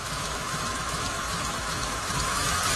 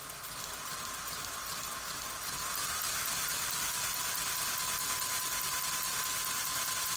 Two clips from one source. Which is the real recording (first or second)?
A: second